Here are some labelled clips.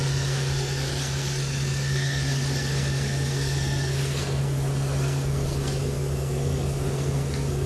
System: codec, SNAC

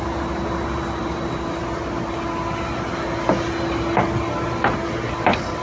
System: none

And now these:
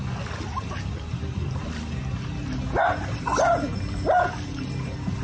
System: none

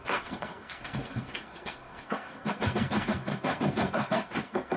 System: codec, SNAC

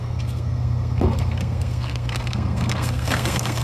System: codec, SNAC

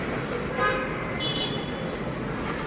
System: none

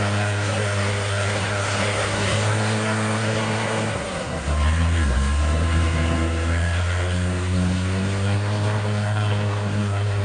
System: codec, SNAC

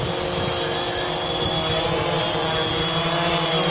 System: none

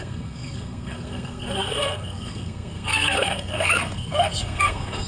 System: codec, SNAC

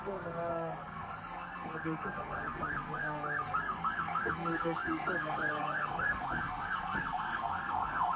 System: codec, SNAC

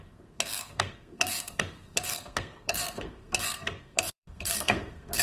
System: codec, SNAC